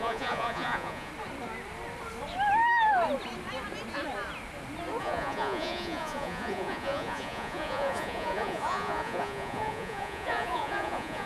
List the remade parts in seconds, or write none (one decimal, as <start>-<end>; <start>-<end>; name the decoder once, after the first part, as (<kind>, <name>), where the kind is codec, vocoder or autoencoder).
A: 0.0-1.1 (vocoder, Vocos); 5.0-11.3